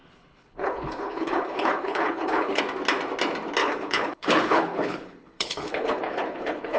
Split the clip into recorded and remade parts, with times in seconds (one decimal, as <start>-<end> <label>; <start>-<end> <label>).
0.0-2.6 remade; 2.6-3.6 recorded; 3.6-6.8 remade